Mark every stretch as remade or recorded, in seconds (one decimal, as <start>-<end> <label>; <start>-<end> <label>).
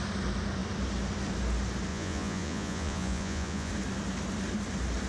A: 0.0-1.9 recorded; 1.9-3.7 remade; 3.7-5.1 recorded